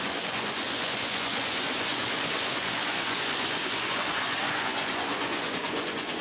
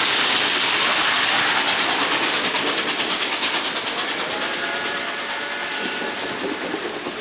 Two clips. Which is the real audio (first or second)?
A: second